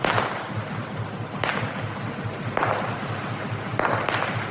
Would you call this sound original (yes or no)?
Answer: yes